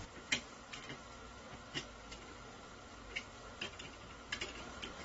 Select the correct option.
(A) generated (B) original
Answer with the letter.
B